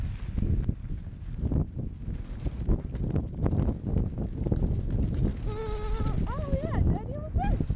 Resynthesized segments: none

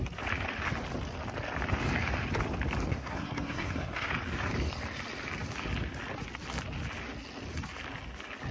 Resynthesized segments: 2.9-4.1 (codec, SNAC)

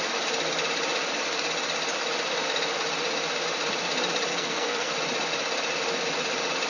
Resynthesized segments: 4.3-4.9 (codec, SNAC)

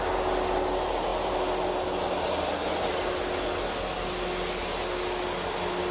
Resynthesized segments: none